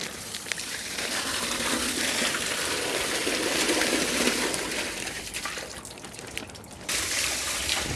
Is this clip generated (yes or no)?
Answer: yes